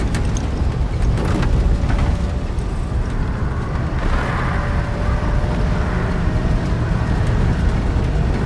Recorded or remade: recorded